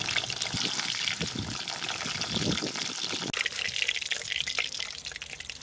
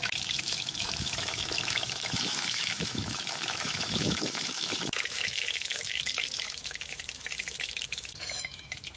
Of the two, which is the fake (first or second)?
second